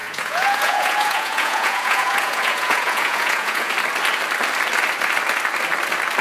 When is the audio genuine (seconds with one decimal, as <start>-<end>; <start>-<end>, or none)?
3.7-6.2